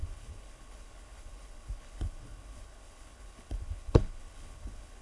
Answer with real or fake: fake